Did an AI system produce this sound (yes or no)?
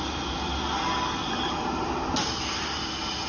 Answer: no